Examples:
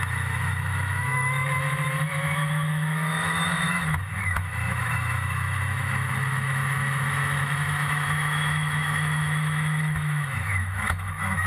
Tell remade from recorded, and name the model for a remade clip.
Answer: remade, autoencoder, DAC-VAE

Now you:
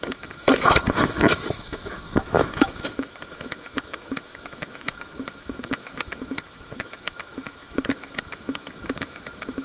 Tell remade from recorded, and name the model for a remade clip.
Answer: remade, autoencoder, DAC-VAE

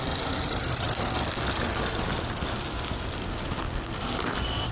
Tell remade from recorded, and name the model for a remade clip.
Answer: recorded